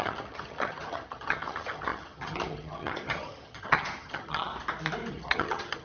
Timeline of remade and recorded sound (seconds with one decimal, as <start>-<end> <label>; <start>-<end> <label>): 0.0-4.5 remade; 4.5-5.1 recorded; 5.1-5.8 remade